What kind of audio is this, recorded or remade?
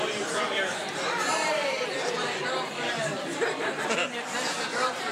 remade